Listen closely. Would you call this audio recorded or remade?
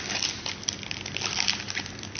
recorded